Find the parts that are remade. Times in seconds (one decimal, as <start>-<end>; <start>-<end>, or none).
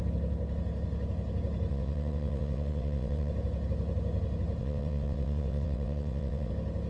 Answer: 1.7-3.3; 4.6-6.5